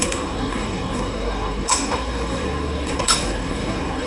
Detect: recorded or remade remade